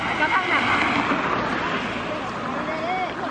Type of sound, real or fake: real